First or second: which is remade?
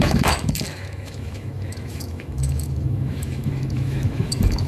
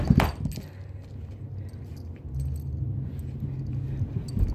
first